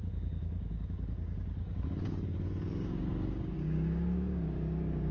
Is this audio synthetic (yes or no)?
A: yes